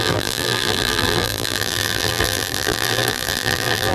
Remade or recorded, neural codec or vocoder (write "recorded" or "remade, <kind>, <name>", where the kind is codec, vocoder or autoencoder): remade, vocoder, BigVGAN v2